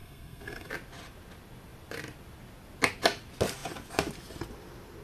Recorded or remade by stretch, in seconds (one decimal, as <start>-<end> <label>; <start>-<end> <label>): 0.0-0.7 remade; 0.7-5.0 recorded